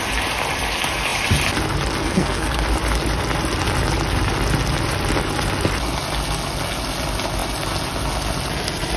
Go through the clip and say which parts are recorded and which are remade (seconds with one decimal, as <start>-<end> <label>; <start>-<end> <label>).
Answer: 0.0-2.0 recorded; 2.0-2.6 remade; 2.6-9.0 recorded